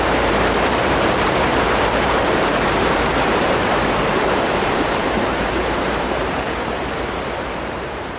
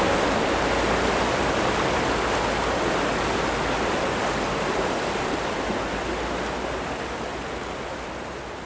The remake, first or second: first